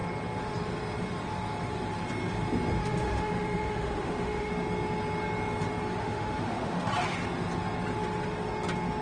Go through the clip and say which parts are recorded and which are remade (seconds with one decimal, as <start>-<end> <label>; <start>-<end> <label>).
0.0-2.8 recorded; 2.8-4.5 remade; 4.5-6.0 recorded; 6.0-6.9 remade; 6.9-9.0 recorded